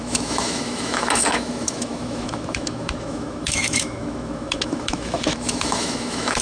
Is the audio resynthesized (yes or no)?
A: yes